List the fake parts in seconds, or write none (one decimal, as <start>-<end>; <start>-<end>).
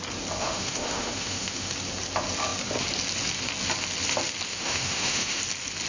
0.4-1.7; 4.5-5.4